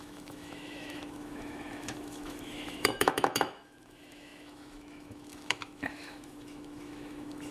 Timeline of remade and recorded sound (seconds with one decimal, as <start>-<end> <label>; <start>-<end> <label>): 0.0-7.5 remade